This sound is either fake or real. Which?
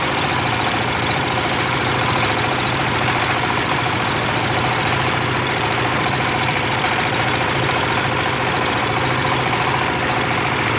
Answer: fake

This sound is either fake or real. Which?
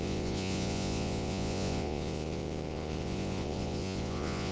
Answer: fake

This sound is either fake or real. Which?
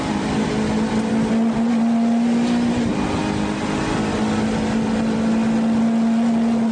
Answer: real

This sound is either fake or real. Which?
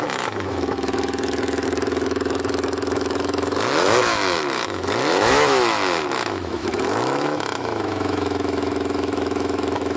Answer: fake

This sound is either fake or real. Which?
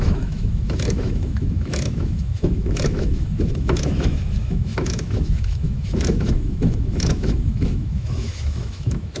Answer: fake